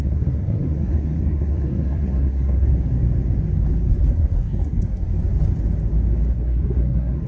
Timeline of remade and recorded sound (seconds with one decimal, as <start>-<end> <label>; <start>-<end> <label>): 0.0-2.7 remade; 2.7-4.0 recorded; 4.0-5.1 remade; 5.1-6.3 recorded; 6.3-7.3 remade